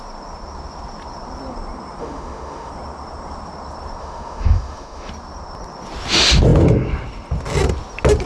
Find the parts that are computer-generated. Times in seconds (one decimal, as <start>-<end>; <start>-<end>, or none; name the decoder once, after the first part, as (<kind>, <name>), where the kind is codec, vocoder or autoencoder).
2.0-2.7 (autoencoder, DAC-VAE); 4.0-5.1